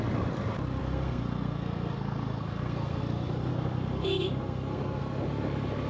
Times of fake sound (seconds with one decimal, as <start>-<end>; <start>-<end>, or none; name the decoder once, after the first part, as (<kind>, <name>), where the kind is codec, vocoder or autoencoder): 0.8-3.0 (codec, SNAC); 3.5-5.0